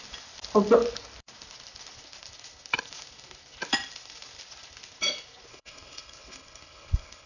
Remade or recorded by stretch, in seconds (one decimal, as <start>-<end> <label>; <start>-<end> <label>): 0.0-5.5 recorded; 5.5-7.3 remade